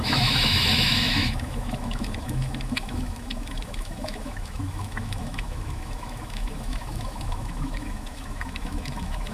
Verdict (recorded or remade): remade